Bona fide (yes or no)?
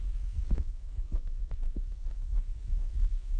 no